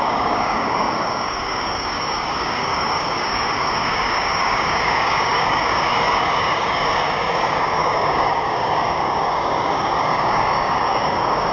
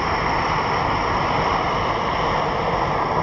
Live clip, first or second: second